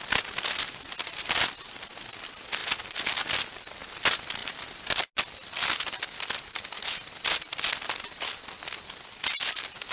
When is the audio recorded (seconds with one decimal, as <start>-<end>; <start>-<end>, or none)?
0.0-9.9